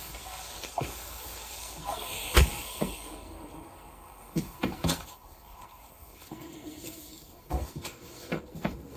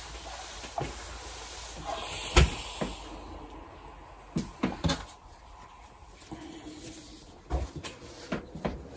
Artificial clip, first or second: first